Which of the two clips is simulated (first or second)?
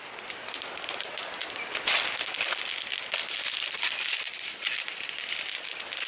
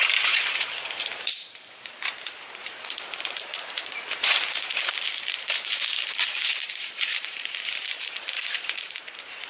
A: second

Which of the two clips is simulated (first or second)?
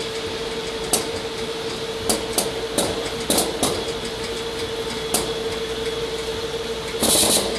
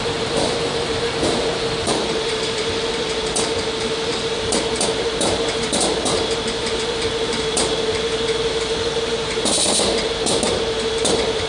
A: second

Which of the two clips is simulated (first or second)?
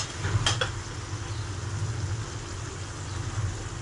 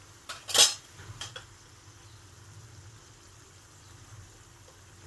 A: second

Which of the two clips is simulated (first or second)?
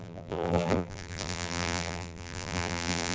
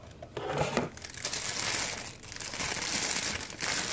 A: first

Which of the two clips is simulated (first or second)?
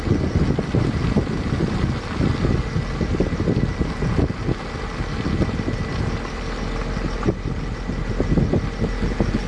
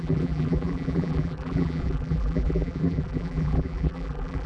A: second